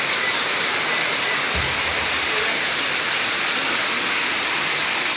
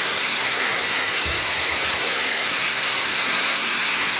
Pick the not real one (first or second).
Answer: second